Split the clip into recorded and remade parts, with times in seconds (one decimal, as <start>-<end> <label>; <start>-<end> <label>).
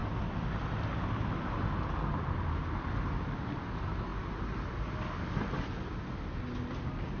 0.0-7.2 recorded